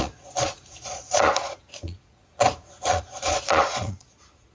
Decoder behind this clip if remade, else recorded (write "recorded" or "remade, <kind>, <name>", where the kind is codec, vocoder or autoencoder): remade, vocoder, Vocos